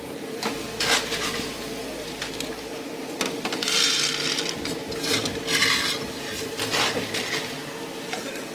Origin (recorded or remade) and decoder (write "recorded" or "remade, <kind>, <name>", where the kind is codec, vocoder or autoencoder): recorded